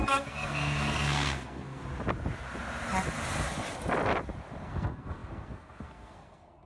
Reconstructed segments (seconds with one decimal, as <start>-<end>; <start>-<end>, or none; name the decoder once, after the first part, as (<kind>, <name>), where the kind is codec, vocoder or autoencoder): 0.0-1.8 (codec, SNAC); 4.6-6.7